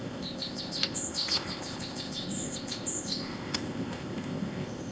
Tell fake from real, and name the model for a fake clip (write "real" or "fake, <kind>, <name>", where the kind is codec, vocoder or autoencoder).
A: fake, codec, ZipCodec